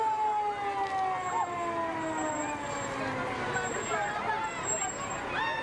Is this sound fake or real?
real